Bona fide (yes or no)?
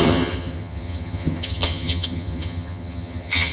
no